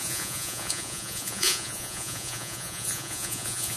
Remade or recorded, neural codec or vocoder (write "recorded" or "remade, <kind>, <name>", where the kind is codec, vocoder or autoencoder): remade, vocoder, Vocos